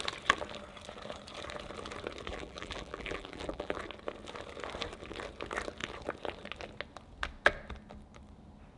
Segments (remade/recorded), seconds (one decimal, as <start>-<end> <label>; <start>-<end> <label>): 0.0-2.3 recorded; 2.3-3.8 remade; 3.8-8.8 recorded